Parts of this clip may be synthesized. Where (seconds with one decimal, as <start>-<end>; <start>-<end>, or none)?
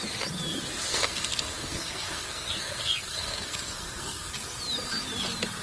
0.9-4.3